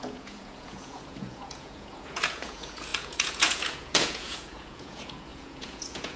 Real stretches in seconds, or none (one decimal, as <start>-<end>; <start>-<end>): none

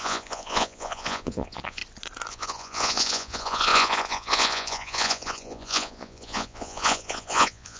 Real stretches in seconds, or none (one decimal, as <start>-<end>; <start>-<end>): 1.8-2.3